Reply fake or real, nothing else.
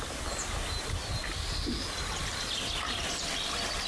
real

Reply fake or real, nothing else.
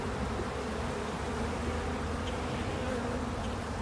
real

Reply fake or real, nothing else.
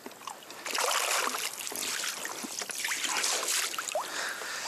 real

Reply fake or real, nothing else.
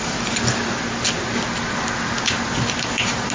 real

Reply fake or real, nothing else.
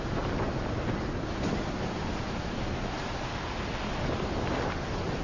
real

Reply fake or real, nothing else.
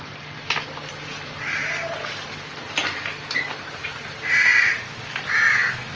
real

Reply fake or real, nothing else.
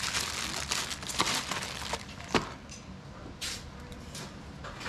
real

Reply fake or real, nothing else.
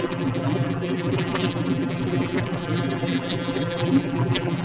fake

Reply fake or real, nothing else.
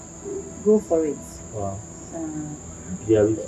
real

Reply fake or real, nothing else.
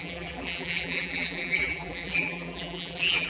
fake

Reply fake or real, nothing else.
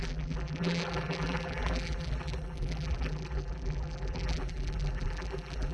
fake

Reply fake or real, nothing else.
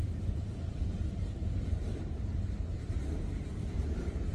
fake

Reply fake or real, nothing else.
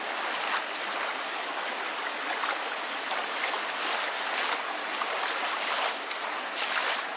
real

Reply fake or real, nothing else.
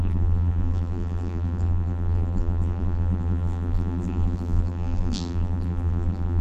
fake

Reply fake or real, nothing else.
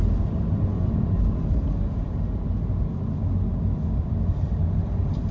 real